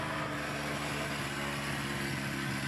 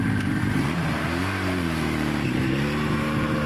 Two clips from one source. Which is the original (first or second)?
first